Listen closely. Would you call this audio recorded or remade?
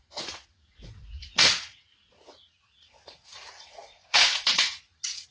remade